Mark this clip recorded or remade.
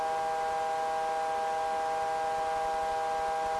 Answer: recorded